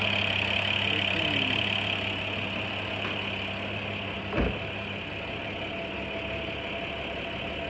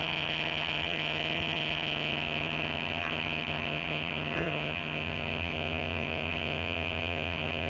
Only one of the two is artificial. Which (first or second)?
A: second